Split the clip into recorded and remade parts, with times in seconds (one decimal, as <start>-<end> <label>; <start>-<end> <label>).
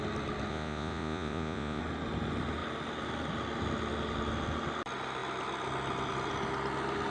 0.0-0.5 recorded; 0.5-1.8 remade; 1.8-7.1 recorded